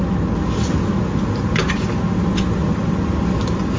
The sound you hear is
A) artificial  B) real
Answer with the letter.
B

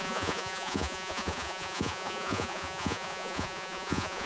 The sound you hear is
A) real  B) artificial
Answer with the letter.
B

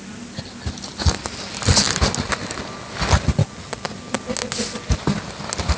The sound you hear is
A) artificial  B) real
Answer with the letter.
B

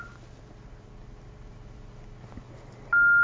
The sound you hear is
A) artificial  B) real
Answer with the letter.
B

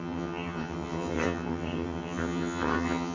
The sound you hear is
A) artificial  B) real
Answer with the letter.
A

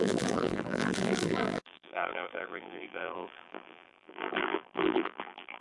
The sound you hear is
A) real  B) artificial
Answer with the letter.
B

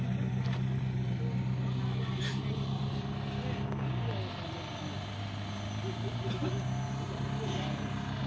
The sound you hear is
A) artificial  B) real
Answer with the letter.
B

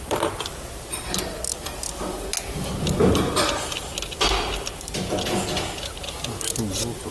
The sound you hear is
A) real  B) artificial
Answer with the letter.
A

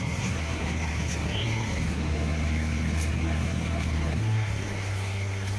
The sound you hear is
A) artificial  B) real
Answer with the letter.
A